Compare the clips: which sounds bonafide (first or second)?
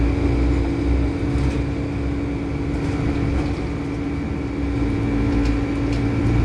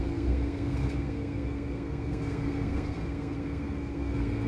first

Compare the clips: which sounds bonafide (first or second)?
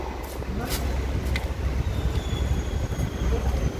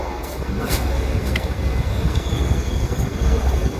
first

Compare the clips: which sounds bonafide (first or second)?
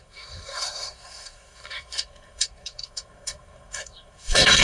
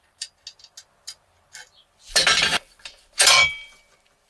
second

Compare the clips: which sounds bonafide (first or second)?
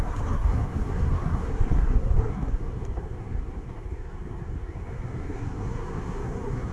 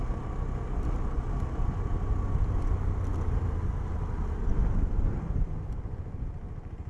second